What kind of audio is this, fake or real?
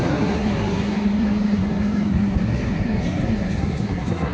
fake